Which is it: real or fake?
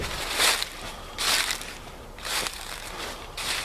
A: real